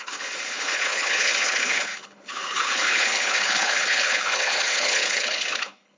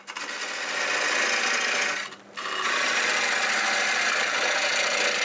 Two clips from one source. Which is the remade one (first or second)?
first